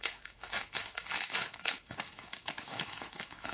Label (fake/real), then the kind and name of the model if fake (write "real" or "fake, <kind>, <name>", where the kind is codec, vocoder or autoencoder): fake, autoencoder, DAC-VAE